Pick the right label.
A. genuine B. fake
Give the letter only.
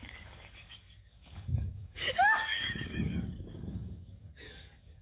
B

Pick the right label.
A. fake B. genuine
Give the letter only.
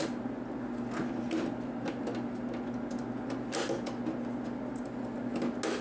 B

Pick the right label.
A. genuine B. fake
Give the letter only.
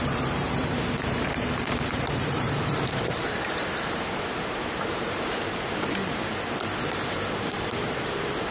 B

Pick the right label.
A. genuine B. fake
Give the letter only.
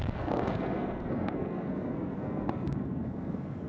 B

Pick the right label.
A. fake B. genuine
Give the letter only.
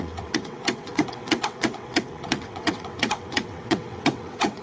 A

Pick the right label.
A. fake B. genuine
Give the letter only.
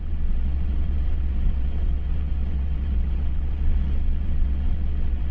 A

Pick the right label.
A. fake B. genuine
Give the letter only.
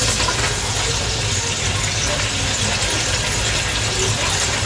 B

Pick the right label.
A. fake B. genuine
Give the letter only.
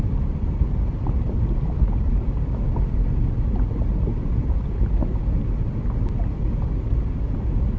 B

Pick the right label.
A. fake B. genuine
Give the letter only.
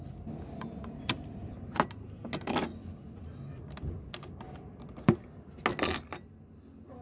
B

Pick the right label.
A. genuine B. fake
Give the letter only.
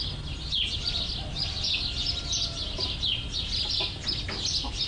A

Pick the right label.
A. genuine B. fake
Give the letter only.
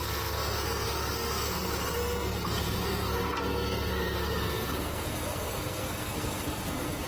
B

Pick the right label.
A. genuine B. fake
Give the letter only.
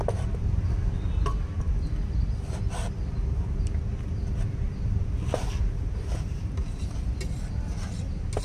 A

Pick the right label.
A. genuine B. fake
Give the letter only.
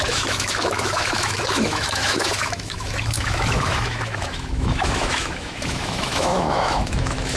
B